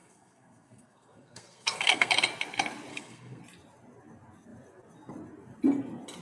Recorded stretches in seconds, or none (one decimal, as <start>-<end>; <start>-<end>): 2.1-2.9; 3.4-6.2